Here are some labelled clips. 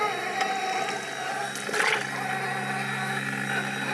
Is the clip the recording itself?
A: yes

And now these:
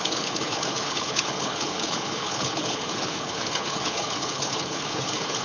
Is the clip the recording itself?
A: no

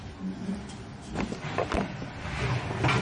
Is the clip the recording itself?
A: yes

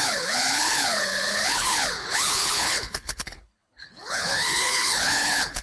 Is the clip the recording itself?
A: no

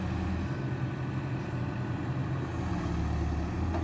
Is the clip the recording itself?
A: yes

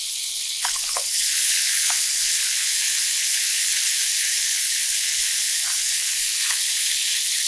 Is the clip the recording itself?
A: no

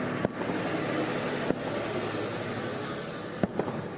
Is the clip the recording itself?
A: yes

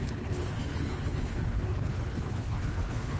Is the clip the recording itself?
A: no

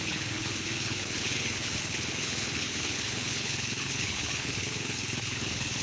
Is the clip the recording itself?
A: no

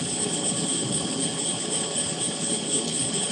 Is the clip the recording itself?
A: no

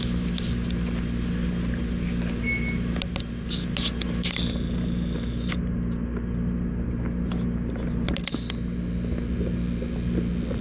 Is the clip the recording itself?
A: yes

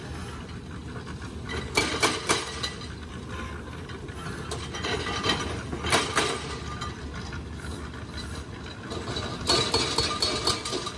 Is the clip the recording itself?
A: yes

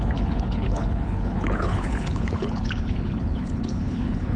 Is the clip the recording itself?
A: no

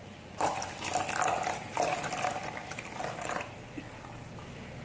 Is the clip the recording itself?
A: yes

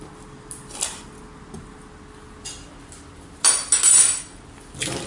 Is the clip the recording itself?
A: yes